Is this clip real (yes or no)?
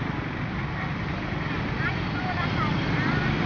yes